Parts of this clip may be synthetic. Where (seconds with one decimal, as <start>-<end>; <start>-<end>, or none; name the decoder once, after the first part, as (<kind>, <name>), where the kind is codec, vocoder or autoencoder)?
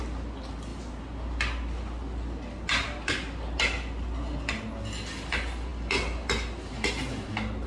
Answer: none